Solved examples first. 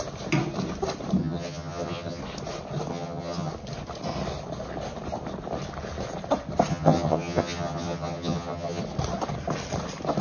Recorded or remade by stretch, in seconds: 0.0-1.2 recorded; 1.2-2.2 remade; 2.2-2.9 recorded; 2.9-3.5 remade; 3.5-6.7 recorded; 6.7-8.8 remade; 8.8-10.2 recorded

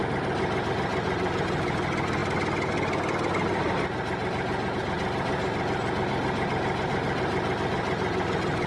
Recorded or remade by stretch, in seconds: 0.0-8.7 recorded